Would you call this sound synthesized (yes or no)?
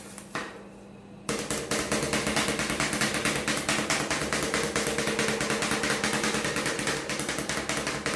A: no